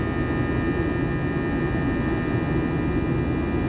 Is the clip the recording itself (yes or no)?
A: yes